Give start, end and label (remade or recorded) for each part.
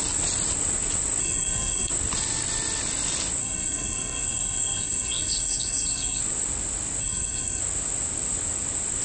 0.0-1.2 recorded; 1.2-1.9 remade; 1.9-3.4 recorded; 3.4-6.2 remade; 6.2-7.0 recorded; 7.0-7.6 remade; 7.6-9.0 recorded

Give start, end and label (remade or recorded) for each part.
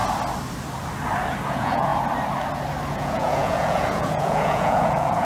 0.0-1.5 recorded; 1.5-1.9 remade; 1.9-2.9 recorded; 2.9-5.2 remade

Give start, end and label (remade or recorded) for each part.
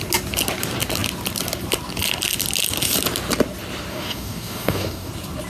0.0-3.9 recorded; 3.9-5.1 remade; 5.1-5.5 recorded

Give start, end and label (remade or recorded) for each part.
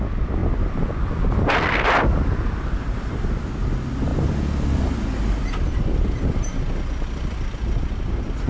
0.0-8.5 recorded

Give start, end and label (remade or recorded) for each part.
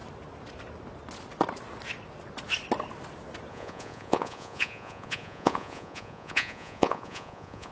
0.0-3.5 recorded; 3.5-7.7 remade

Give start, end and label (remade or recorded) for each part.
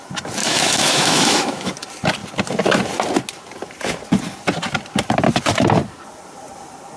0.0-0.4 recorded; 0.4-1.7 remade; 1.7-7.0 recorded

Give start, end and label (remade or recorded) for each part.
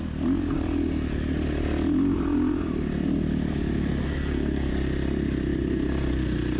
0.0-4.0 recorded; 4.0-4.7 remade; 4.7-6.6 recorded